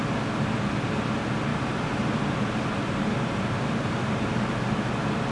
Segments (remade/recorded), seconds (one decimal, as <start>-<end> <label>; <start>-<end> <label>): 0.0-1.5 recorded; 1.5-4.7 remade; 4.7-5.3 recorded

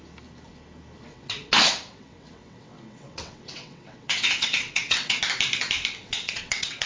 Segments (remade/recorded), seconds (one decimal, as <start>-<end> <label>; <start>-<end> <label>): 0.0-1.1 recorded; 1.1-5.2 remade; 5.2-6.0 recorded; 6.0-6.9 remade

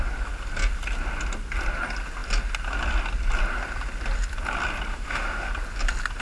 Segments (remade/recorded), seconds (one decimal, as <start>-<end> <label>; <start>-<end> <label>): 0.0-4.9 recorded; 4.9-5.5 remade; 5.5-6.2 recorded

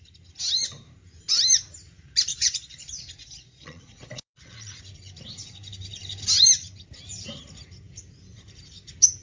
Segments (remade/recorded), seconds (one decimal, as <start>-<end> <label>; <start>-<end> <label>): 0.0-2.3 recorded; 2.3-4.8 remade; 4.8-9.2 recorded

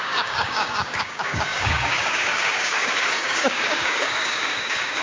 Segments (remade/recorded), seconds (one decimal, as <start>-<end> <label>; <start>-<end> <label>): 0.0-5.0 remade

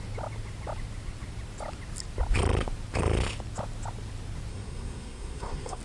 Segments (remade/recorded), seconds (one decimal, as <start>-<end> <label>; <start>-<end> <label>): 0.0-4.5 recorded; 4.5-5.8 remade

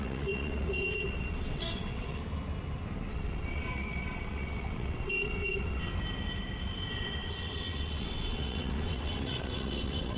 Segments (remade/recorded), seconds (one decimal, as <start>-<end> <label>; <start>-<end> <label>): 0.0-2.2 remade; 2.2-3.1 recorded; 3.1-5.9 remade; 5.9-6.9 recorded; 6.9-10.2 remade